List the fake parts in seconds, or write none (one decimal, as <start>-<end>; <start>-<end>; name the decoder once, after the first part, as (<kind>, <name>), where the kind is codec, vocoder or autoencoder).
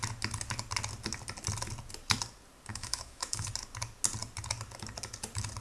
2.7-3.5 (autoencoder, DAC-VAE)